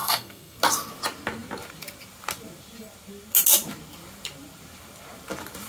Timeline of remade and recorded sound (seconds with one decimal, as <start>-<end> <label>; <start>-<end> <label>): 0.0-0.6 remade; 0.6-5.7 recorded